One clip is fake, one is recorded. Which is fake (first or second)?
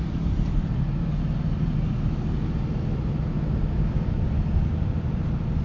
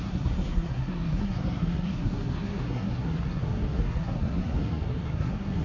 second